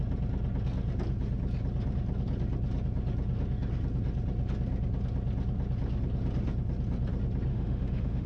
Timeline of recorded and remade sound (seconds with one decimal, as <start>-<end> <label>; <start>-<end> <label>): 0.0-7.5 recorded; 7.5-8.3 remade